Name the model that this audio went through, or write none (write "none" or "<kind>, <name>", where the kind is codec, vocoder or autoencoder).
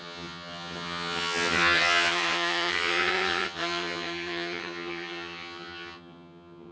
vocoder, HiFi-GAN